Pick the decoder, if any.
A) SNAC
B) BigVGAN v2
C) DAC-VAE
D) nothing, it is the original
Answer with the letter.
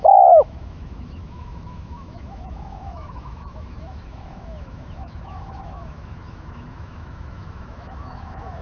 C